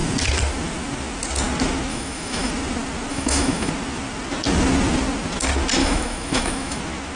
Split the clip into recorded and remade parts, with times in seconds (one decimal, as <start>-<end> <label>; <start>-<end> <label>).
0.0-1.9 recorded; 1.9-2.5 remade; 2.5-3.1 recorded; 3.1-3.7 remade; 3.7-5.8 recorded; 5.8-6.8 remade; 6.8-7.2 recorded